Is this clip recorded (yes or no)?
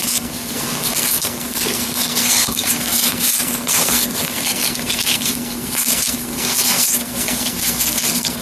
no